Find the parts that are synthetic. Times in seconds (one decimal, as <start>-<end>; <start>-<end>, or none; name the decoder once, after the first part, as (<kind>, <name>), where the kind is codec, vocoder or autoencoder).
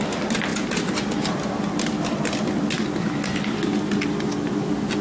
none